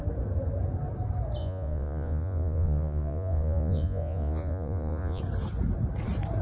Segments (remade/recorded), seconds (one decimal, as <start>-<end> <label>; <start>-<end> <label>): 0.0-1.4 recorded; 1.4-5.2 remade; 5.2-6.4 recorded